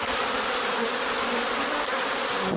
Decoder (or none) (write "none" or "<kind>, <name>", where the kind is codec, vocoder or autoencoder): none